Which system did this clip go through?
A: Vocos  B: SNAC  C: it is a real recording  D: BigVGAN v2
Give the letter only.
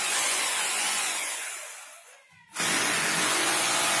A